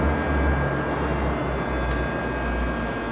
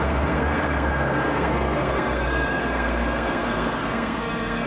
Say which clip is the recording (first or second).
first